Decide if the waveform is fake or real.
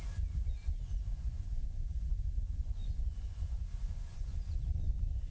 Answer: fake